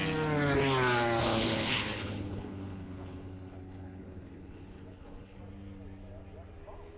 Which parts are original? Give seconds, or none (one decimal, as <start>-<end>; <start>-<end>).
0.0-1.2; 5.4-7.0

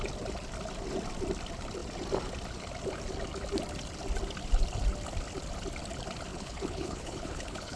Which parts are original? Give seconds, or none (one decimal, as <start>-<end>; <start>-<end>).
0.0-6.3

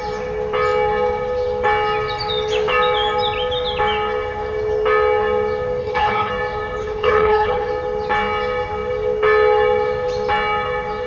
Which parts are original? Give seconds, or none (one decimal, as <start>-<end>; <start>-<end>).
0.0-5.8; 6.3-6.8; 7.7-11.1

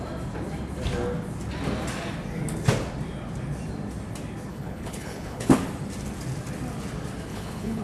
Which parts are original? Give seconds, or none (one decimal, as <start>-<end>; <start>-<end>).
0.0-4.5; 5.6-7.3

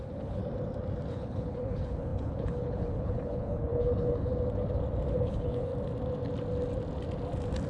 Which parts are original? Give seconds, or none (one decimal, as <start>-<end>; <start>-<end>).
0.4-1.1; 4.3-5.1; 5.7-7.7

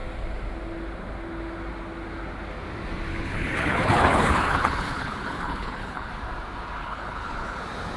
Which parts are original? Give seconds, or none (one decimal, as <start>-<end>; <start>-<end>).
0.0-3.1; 6.1-6.8; 7.6-8.0

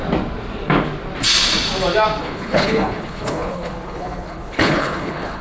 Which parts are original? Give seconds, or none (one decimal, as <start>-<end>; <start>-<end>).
0.0-2.2

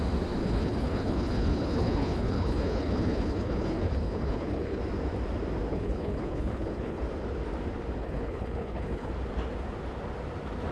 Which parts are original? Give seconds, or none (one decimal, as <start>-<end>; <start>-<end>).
0.0-0.4; 4.8-5.7; 7.0-8.0; 9.1-10.7